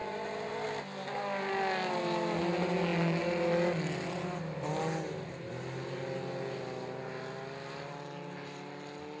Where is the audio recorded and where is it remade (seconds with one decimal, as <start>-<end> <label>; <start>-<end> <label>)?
0.0-9.2 recorded